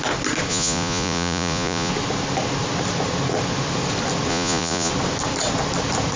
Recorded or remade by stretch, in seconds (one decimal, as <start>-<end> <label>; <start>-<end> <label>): 0.0-0.5 recorded; 0.5-1.9 remade; 1.9-4.3 recorded; 4.3-4.9 remade; 4.9-6.2 recorded